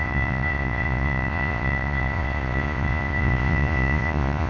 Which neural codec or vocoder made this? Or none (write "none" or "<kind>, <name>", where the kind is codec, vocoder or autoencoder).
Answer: vocoder, Vocos